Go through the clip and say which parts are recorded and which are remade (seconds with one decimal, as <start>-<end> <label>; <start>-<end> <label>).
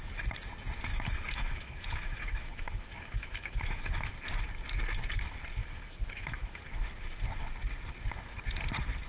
0.0-0.9 recorded; 0.9-4.1 remade; 4.1-5.6 recorded; 5.6-6.6 remade; 6.6-9.1 recorded